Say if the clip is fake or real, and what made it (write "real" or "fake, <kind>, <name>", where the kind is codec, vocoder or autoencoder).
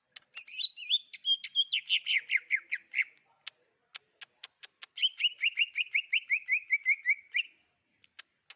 real